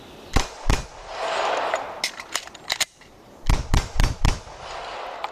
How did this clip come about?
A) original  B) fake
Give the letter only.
A